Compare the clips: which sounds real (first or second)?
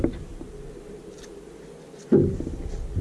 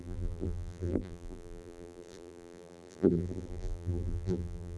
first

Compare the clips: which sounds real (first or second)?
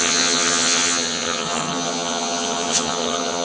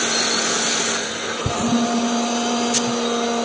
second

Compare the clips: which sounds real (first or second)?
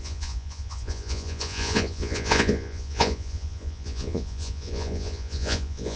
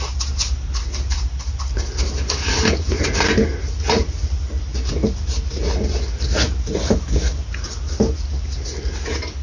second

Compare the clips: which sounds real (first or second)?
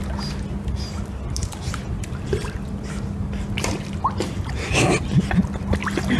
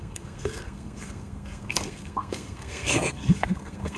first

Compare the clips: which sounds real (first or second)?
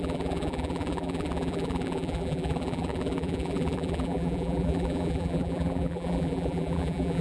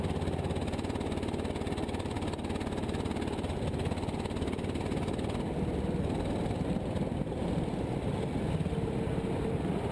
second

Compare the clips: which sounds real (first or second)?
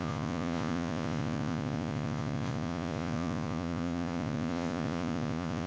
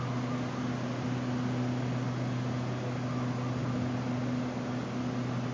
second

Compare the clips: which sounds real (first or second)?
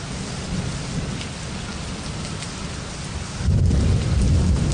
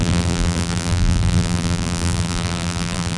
first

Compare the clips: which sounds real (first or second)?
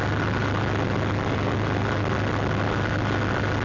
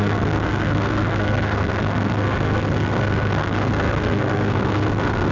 first